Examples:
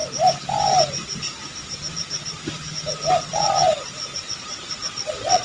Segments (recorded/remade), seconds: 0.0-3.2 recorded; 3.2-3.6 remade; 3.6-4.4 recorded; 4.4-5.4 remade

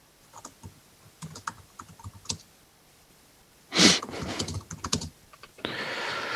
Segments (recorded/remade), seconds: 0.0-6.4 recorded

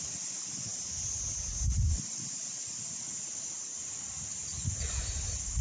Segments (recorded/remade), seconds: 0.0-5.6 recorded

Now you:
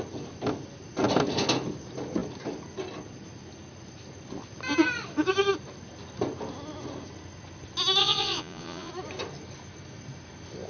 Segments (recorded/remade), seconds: 0.0-8.0 recorded; 8.0-8.9 remade; 8.9-10.7 recorded

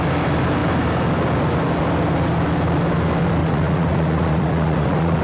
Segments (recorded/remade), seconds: 0.0-3.4 recorded; 3.4-5.2 remade